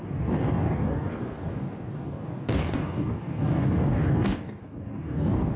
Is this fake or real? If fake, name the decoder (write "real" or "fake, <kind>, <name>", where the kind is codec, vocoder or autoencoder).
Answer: fake, codec, DAC